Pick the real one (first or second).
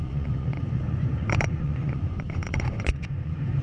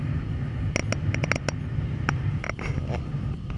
second